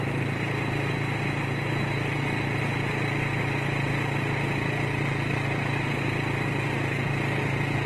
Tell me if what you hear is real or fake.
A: real